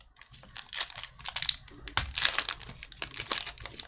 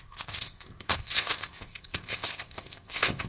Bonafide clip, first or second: first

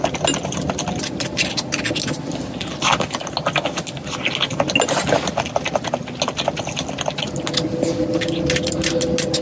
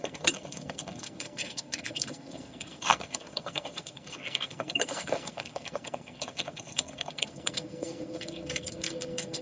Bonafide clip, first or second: first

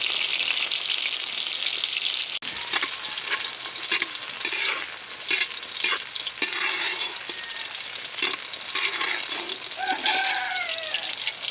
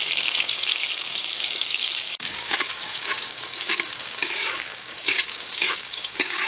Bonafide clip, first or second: first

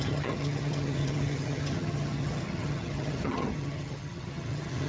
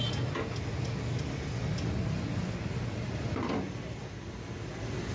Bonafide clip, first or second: second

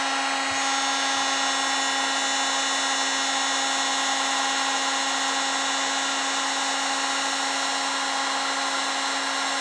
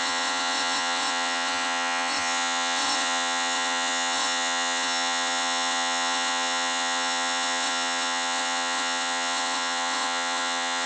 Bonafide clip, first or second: first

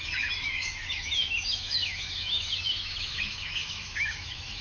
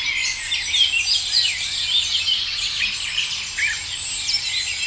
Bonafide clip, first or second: second